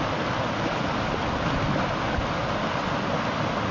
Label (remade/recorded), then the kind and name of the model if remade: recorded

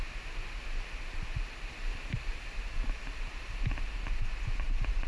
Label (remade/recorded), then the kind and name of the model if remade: recorded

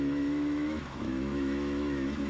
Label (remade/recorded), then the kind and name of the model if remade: remade, autoencoder, DAC-VAE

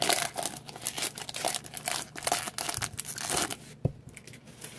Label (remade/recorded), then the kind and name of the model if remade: recorded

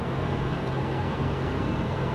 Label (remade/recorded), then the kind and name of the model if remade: remade, codec, SNAC